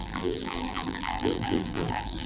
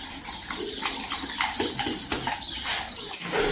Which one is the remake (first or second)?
first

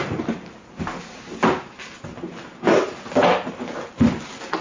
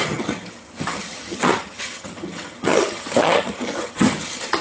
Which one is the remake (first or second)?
second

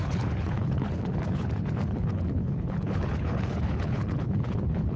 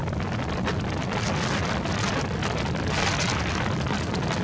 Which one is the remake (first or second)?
first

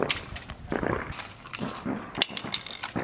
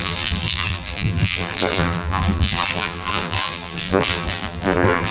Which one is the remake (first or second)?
second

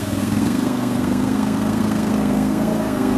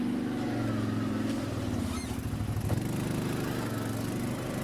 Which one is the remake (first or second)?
first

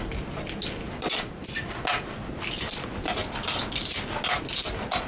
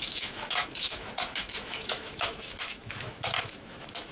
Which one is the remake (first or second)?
second